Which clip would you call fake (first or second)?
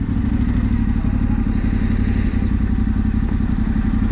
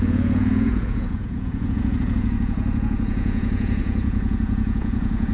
second